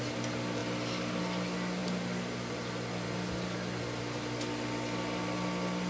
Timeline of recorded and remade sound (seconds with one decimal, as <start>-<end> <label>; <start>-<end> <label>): 0.0-5.9 recorded